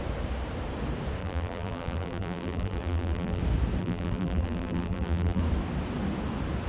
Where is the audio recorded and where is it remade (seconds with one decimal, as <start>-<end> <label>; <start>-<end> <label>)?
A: 0.0-1.2 recorded; 1.2-3.4 remade; 3.4-3.8 recorded; 3.8-5.4 remade; 5.4-6.7 recorded